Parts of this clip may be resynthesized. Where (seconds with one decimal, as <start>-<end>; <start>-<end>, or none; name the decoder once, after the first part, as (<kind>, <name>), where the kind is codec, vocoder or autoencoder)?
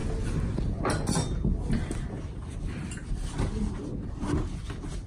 none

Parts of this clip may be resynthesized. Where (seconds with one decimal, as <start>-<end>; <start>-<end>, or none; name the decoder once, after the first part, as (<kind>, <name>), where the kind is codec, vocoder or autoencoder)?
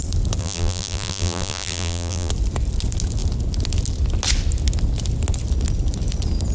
0.4-2.3 (vocoder, BigVGAN v2)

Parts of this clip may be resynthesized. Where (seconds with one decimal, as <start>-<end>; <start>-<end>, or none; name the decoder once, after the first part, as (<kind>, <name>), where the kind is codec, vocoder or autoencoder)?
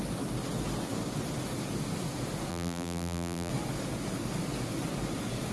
2.5-3.5 (vocoder, BigVGAN v2)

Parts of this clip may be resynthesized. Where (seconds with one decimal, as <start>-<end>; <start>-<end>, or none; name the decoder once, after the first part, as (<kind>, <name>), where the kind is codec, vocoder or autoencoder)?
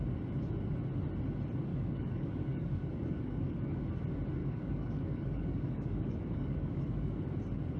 1.7-3.8 (codec, DAC); 4.4-7.2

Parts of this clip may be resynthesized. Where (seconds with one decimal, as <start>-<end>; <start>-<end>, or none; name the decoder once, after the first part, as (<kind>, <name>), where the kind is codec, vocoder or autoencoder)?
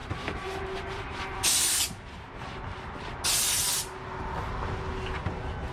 0.0-1.5 (vocoder, BigVGAN v2)